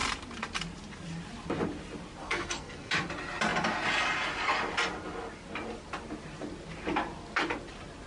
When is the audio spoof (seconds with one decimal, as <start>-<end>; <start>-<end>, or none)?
2.2-2.9